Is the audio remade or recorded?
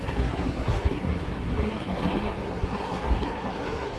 remade